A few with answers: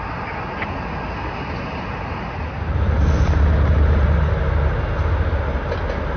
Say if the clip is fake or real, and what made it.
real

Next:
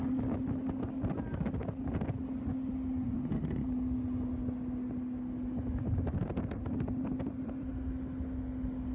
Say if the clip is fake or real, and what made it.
real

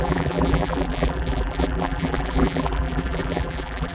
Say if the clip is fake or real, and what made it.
fake, vocoder, BigVGAN v2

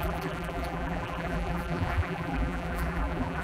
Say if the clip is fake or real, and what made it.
fake, vocoder, BigVGAN v2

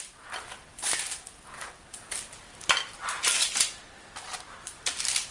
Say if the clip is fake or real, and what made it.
real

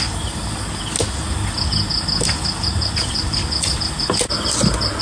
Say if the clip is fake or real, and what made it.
real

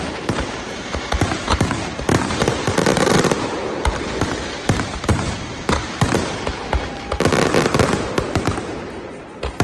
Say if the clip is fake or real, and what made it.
fake, vocoder, BigVGAN v2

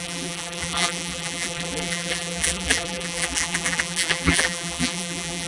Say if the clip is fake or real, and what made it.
fake, vocoder, BigVGAN v2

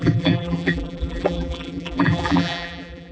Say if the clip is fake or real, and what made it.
fake, vocoder, BigVGAN v2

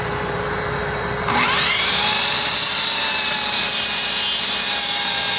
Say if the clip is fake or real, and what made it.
fake, vocoder, BigVGAN v2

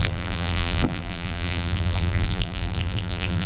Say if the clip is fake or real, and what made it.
fake, vocoder, BigVGAN v2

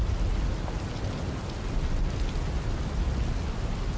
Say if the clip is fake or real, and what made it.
real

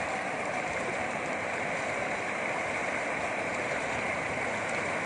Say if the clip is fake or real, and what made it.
fake, vocoder, BigVGAN v2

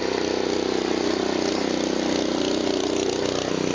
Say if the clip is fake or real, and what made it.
real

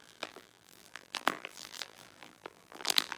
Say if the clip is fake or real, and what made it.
fake, vocoder, BigVGAN v2